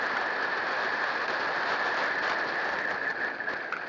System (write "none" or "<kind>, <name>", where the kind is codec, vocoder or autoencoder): none